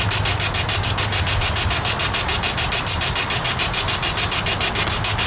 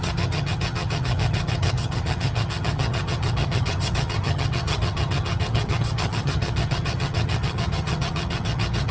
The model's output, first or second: second